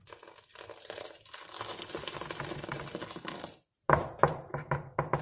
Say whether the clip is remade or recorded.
recorded